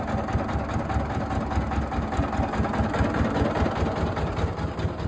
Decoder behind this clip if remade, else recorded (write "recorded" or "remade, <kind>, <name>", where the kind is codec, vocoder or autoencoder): recorded